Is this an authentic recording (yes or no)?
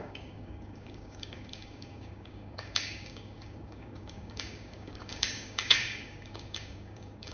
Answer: no